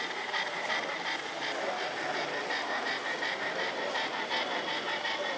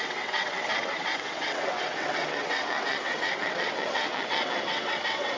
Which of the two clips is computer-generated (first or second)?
second